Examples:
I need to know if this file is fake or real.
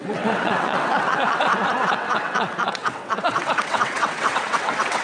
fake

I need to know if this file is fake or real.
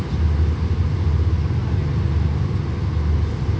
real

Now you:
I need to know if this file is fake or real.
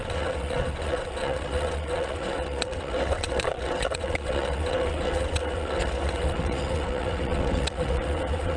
fake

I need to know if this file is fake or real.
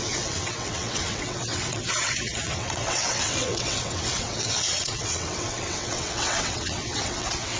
fake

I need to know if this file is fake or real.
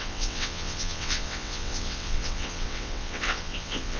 fake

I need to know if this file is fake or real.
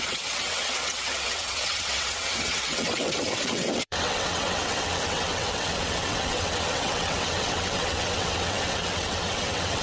fake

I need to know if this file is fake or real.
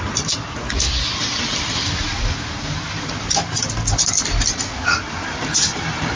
real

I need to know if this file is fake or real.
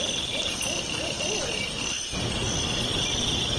real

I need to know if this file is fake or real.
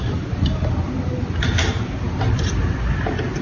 real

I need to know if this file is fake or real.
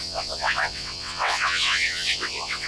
fake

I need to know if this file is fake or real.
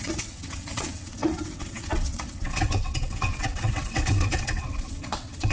fake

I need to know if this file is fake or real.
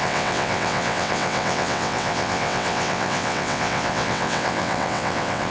fake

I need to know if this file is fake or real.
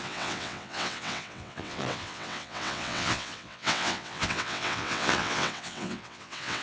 fake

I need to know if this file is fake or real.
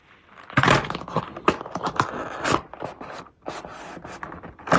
real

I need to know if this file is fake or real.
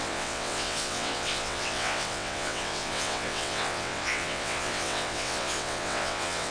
fake